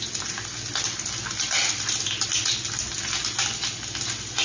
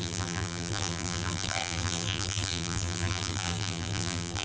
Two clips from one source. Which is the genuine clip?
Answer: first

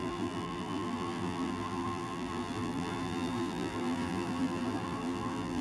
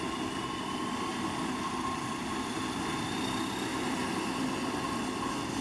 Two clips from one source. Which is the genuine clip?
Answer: second